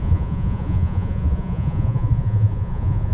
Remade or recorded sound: remade